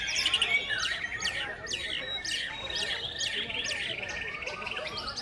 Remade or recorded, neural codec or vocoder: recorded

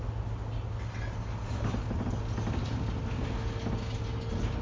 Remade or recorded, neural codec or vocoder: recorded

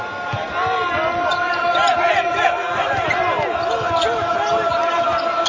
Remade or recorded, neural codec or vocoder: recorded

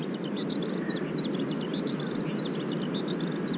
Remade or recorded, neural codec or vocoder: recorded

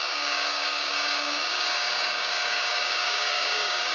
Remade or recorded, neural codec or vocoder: remade, codec, DAC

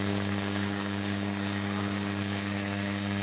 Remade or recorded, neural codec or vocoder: remade, codec, DAC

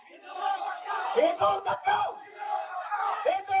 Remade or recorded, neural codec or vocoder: remade, codec, DAC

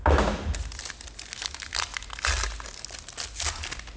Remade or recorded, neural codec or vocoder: recorded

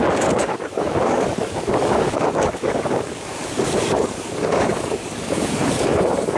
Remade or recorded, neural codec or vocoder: remade, codec, DAC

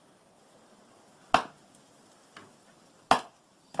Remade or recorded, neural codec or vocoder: recorded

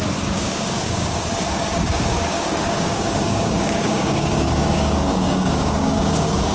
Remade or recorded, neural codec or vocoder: remade, codec, DAC